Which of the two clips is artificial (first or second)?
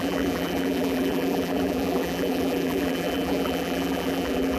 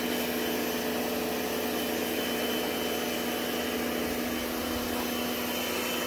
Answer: first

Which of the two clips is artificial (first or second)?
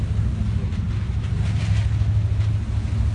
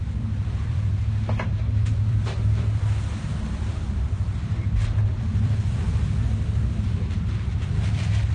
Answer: second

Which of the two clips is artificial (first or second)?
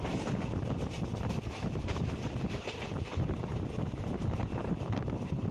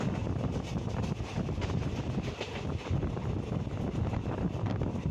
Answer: first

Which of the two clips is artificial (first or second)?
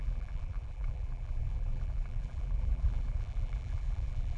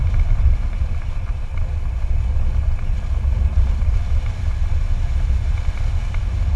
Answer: first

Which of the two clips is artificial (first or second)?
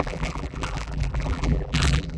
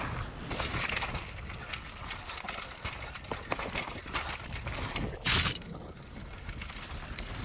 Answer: first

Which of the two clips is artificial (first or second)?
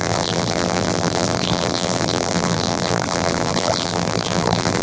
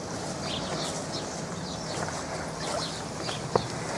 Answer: first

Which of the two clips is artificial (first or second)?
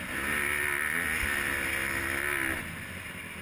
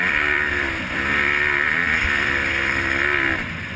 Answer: second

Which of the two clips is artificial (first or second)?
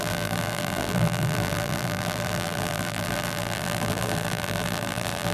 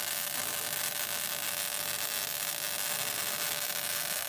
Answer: first